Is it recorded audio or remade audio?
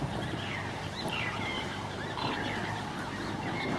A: remade